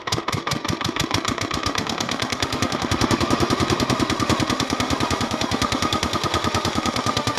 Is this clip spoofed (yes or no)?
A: yes